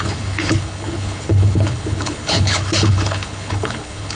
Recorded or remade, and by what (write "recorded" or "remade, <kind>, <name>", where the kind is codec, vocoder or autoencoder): remade, codec, HILCodec